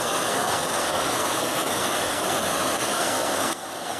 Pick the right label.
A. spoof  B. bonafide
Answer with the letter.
A